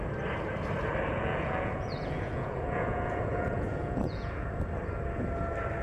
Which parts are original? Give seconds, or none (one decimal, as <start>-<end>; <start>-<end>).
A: 0.0-1.1; 4.6-5.8